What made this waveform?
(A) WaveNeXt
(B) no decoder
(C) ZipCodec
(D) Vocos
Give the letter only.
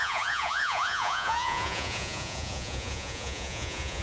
D